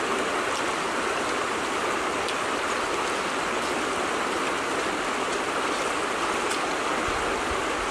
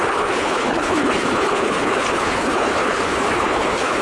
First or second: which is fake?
second